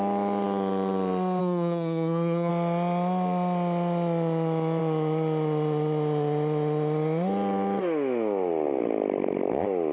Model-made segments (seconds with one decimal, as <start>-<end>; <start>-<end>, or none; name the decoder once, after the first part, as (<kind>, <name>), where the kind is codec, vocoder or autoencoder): 1.4-2.5 (codec, SNAC)